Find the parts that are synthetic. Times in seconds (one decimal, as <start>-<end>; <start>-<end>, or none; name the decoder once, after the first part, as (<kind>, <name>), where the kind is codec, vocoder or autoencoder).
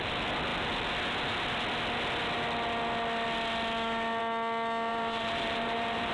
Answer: 4.9-6.1 (vocoder, BigVGAN v2)